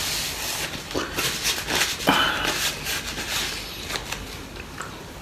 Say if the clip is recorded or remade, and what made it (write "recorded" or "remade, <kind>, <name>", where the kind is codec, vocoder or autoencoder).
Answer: recorded